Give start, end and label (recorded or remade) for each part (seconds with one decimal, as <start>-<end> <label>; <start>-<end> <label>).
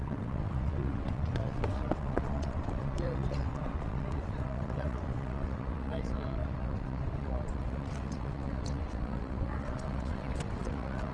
0.0-11.1 remade